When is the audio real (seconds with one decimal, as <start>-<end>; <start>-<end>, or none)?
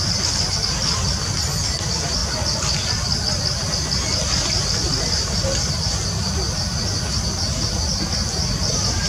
0.0-9.1